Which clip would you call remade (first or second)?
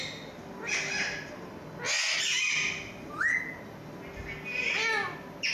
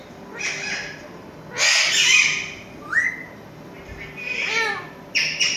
second